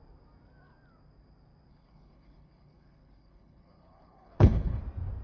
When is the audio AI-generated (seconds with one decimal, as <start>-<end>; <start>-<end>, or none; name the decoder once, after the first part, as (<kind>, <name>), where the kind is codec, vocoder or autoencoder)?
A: 1.7-4.8 (codec, HILCodec)